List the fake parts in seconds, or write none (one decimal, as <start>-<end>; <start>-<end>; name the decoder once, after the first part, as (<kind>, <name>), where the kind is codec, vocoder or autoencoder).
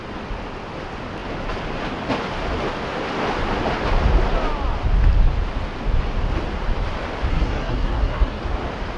7.3-8.4 (codec, SNAC)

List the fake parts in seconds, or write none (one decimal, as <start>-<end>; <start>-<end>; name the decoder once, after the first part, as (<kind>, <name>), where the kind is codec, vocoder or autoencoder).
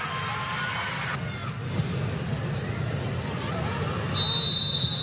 none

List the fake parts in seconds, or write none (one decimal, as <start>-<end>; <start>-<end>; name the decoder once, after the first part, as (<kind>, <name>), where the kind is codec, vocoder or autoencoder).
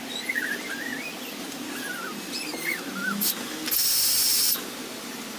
none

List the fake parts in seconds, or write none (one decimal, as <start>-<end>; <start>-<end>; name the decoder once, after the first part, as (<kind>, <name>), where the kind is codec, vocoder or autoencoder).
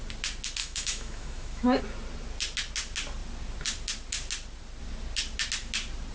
0.6-1.8 (autoencoder, DAC-VAE)